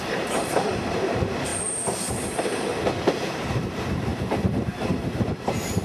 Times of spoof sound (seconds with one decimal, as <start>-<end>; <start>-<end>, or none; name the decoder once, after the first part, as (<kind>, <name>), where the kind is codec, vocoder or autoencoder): 0.0-1.5 (vocoder, BigVGAN v2); 3.3-5.8